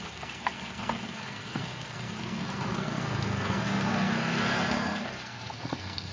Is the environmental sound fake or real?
fake